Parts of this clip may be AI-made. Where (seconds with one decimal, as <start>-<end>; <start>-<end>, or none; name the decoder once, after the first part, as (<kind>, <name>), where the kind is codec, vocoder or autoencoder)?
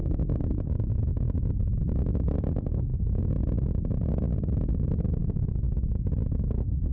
1.1-1.7 (vocoder, BigVGAN v2)